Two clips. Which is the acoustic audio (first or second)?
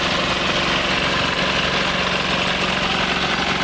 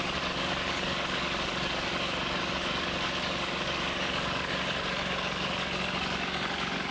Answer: first